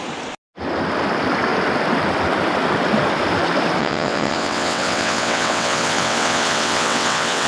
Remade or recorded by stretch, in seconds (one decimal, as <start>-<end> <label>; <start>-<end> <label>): 0.0-3.8 recorded; 3.8-7.5 remade